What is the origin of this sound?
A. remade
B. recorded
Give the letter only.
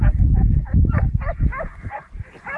B